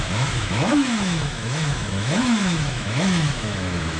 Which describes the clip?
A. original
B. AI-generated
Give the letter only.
B